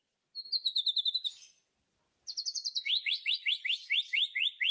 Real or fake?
real